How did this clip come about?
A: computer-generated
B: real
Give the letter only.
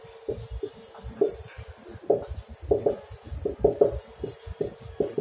B